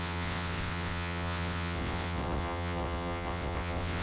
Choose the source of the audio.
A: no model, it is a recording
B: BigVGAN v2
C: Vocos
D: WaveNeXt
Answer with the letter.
D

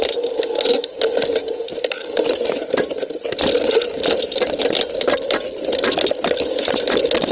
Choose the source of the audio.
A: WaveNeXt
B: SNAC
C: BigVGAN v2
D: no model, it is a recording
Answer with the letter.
D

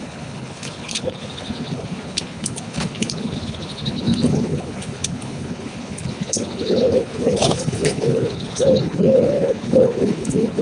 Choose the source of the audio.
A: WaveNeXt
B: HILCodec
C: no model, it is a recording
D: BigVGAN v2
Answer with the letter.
B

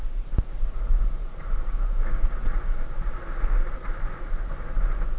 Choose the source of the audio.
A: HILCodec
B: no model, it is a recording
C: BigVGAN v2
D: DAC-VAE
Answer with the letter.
B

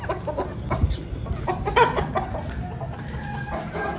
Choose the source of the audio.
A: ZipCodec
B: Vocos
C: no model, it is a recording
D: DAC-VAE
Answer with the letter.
C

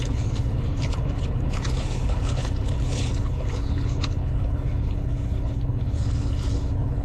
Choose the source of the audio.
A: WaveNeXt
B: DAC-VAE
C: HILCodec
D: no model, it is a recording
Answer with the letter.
C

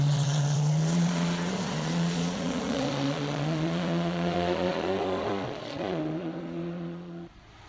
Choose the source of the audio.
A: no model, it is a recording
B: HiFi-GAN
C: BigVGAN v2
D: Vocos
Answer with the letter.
D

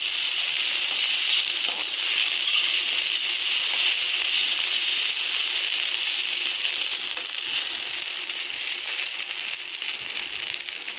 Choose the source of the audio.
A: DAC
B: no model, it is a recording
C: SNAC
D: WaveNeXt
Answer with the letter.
B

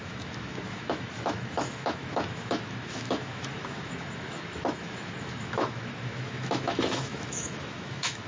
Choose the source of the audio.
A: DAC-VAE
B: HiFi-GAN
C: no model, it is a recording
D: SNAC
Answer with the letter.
A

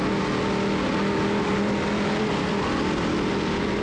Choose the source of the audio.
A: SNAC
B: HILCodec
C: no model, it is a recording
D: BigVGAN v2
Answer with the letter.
C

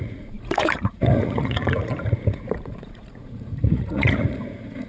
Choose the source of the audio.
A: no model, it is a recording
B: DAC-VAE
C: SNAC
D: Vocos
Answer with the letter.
D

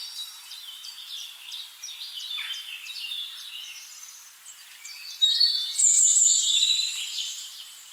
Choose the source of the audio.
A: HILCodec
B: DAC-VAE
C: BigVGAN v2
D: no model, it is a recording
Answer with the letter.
C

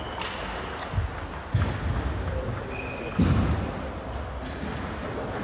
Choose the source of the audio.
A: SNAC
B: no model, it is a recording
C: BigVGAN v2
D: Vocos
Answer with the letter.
B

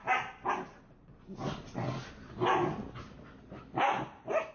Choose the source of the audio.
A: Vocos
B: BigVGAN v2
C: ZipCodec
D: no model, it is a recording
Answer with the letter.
D